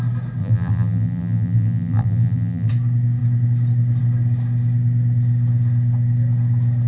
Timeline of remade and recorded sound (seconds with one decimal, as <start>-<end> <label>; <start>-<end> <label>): 0.0-0.4 recorded; 0.4-2.7 remade; 2.7-6.9 recorded